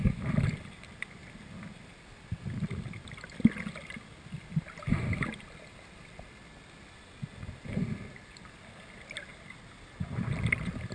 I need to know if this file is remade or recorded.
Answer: recorded